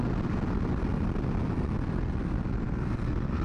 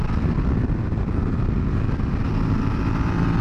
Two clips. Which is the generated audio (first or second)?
second